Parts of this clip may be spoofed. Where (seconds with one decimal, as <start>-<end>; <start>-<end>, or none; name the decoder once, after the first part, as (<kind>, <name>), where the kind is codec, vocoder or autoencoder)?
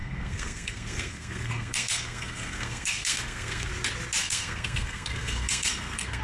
0.0-3.7 (codec, SNAC); 4.2-6.2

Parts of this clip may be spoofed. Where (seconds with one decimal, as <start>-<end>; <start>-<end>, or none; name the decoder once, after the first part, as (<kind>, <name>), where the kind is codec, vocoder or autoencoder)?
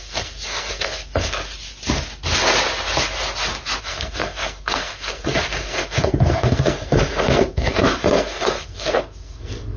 0.0-1.4 (codec, SNAC); 3.8-9.8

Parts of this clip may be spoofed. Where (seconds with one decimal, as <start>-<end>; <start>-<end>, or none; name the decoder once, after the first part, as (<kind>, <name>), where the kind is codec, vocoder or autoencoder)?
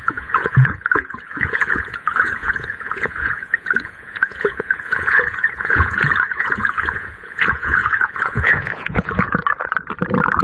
0.0-9.4 (vocoder, Vocos)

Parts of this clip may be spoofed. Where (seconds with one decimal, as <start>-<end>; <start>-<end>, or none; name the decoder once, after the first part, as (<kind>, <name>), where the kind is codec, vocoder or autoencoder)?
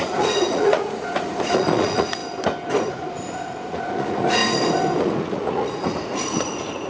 0.0-2.2 (vocoder, Vocos); 2.9-4.4; 5.0-6.9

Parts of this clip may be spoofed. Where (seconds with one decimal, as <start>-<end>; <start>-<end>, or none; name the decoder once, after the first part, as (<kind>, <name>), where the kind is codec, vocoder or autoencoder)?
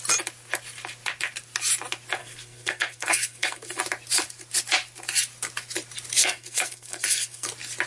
2.2-3.8 (codec, SNAC); 6.2-7.5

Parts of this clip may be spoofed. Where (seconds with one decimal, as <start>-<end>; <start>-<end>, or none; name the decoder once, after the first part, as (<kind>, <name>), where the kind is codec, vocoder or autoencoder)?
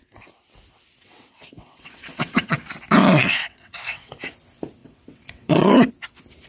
1.0-2.6 (vocoder, WaveNeXt); 3.0-4.1; 4.8-5.9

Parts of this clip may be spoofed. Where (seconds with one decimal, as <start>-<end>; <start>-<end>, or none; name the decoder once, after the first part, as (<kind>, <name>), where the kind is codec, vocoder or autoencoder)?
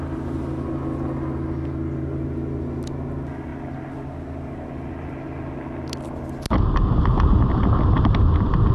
none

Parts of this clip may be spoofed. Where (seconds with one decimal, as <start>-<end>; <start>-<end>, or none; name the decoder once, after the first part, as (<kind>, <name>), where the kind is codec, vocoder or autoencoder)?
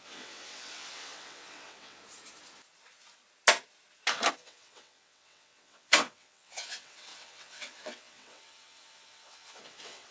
0.0-2.0 (vocoder, WaveNeXt); 4.3-10.1